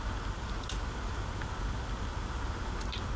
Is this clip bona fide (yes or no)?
yes